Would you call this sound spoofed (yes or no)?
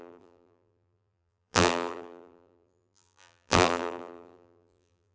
yes